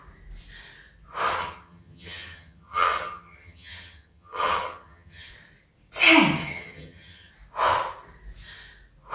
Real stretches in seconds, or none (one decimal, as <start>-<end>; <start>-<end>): 0.0-1.4; 5.3-6.4; 7.3-9.1